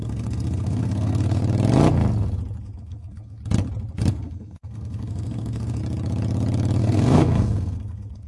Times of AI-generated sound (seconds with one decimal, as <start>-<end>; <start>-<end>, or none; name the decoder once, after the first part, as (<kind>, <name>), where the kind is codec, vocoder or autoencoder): 0.0-1.4 (codec, SNAC); 2.6-3.4; 4.1-5.8; 6.8-8.3